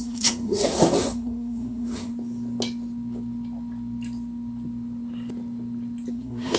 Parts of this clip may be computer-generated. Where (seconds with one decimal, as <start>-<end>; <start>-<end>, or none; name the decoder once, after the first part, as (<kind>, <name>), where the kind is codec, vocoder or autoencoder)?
0.0-2.1 (codec, SNAC); 6.1-6.6